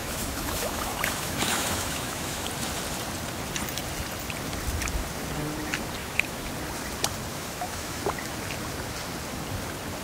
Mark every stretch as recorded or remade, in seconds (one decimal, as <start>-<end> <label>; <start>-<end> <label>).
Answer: 0.0-2.5 remade; 2.5-6.0 recorded; 6.0-6.5 remade; 6.5-7.3 recorded; 7.3-8.0 remade; 8.0-10.0 recorded